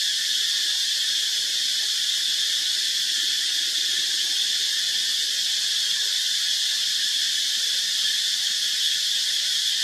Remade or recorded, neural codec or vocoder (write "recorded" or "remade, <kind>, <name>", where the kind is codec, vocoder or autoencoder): recorded